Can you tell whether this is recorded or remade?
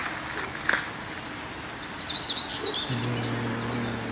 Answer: recorded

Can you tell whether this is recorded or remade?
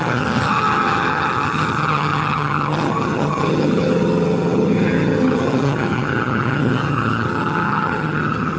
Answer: remade